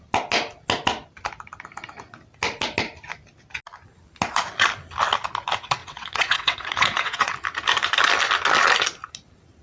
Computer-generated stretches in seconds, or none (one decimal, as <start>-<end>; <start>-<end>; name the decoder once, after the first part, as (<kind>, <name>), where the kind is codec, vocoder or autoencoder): 5.8-7.3 (vocoder, WaveNeXt)